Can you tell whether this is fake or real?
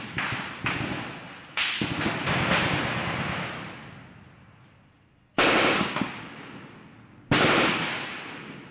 real